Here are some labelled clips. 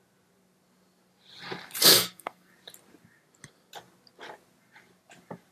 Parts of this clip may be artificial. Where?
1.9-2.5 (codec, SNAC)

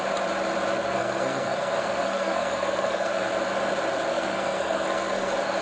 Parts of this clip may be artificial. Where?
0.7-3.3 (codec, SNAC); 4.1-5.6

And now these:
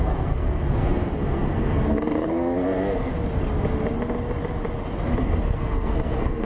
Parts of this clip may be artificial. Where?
0.0-3.1 (codec, SNAC); 5.2-6.4

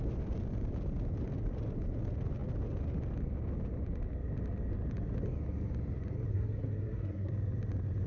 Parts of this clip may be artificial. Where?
6.3-7.3 (codec, SNAC)

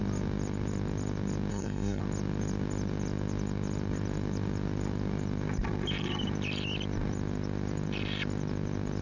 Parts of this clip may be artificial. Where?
1.5-2.0 (codec, SNAC)

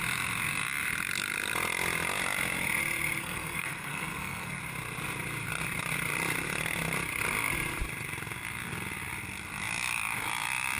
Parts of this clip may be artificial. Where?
3.2-4.6 (codec, SNAC)

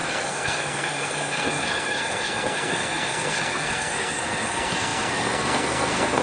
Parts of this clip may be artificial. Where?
0.0-6.2 (codec, SNAC)